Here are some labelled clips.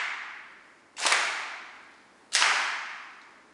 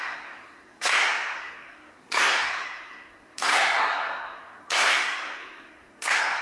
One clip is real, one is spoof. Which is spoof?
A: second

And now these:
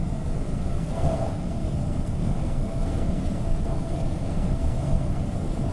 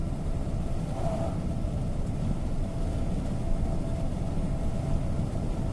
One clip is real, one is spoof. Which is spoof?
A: first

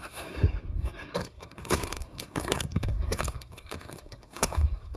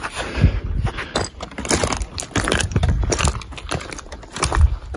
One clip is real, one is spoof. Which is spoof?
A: first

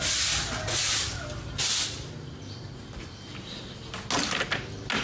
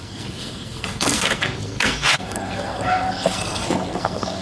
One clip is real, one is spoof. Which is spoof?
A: second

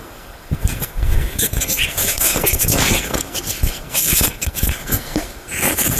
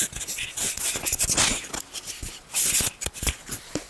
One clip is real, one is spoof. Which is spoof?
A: first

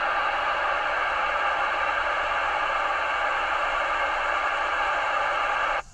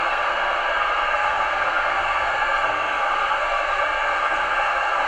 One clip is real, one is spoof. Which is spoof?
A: second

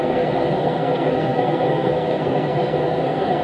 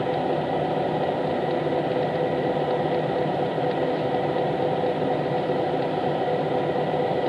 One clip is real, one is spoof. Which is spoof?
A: first